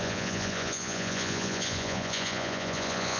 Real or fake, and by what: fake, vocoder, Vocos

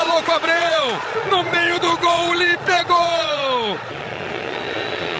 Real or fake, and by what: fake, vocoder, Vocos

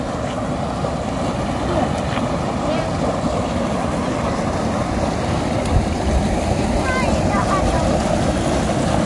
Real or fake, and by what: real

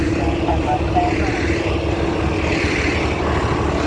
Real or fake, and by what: real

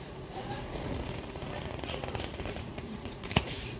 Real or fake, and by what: fake, vocoder, Vocos